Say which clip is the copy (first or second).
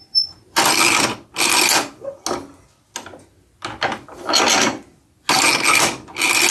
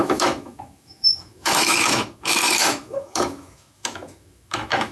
second